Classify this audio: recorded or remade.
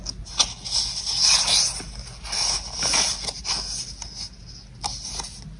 recorded